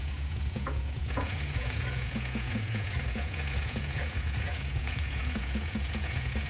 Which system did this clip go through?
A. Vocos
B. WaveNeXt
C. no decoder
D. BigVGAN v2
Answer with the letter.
A